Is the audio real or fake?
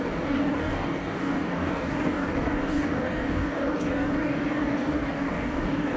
fake